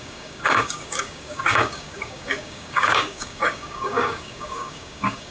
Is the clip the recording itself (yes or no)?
no